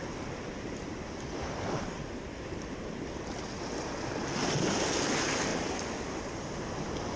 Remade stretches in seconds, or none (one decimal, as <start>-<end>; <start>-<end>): none

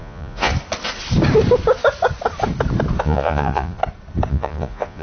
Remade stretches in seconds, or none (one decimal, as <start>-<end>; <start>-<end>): 0.0-0.5; 3.0-3.8; 4.3-5.0

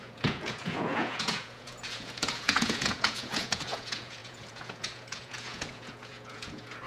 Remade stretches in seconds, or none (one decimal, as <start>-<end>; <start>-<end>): 0.0-6.9

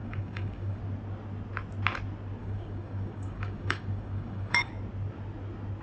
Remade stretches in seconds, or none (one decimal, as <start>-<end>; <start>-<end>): 0.0-0.8; 2.4-4.7